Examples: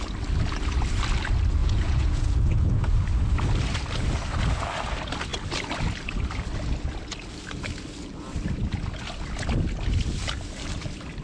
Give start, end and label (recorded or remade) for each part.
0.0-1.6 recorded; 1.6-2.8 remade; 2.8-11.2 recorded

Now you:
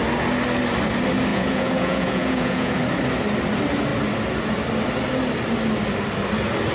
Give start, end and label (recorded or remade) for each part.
0.0-1.3 recorded; 1.3-2.7 remade; 2.7-6.7 recorded